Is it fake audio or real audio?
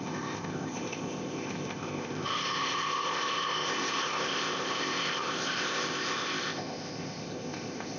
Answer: fake